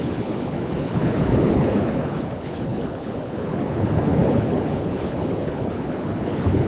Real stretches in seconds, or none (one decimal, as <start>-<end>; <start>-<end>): none